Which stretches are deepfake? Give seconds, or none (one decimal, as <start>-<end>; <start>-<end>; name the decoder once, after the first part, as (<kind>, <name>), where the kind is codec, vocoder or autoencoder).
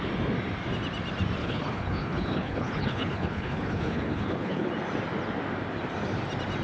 1.4-4.7 (codec, HILCodec)